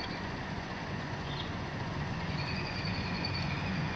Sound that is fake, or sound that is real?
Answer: fake